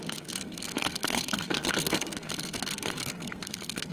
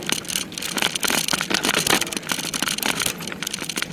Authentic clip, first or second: second